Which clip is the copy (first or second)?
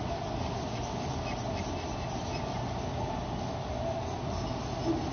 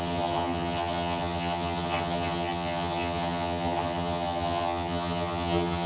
second